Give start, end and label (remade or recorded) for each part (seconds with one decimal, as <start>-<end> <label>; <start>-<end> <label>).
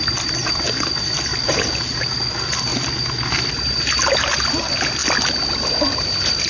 0.0-1.3 remade; 1.3-1.9 recorded; 1.9-2.7 remade; 2.7-4.5 recorded; 4.5-5.0 remade; 5.0-5.9 recorded; 5.9-6.5 remade